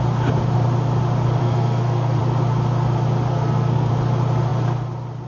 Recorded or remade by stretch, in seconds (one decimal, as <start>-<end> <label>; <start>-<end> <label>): 0.0-1.4 recorded; 1.4-2.2 remade; 2.2-3.3 recorded; 3.3-3.9 remade; 3.9-5.3 recorded